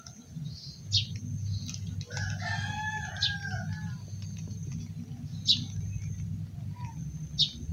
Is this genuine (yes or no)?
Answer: yes